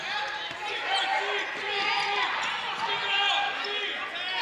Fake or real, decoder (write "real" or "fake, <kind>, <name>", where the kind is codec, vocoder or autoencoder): real